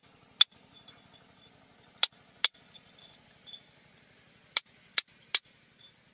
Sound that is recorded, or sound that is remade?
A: recorded